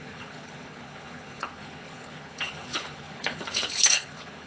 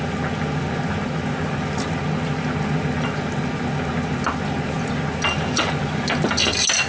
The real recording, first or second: second